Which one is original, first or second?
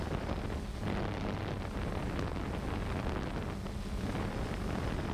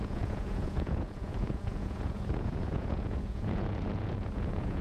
first